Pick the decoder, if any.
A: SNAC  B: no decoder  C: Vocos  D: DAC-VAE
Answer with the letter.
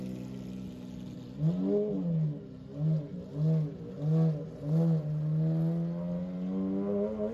B